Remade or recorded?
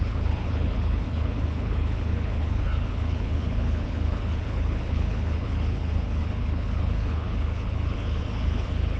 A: remade